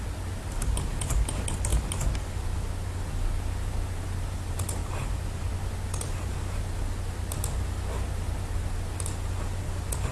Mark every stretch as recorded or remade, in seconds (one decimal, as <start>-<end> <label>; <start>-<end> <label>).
0.0-10.1 recorded